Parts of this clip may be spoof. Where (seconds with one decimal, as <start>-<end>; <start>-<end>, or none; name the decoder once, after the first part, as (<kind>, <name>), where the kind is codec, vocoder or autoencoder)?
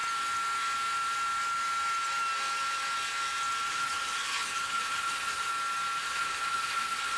3.7-5.5 (codec, HILCodec); 6.0-7.2